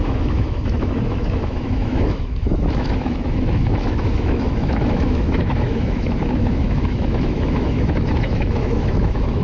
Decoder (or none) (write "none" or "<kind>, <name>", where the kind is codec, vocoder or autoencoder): autoencoder, DAC-VAE